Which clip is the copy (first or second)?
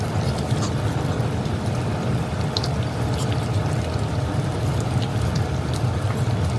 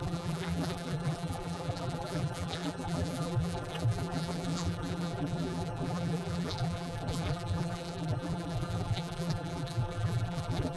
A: second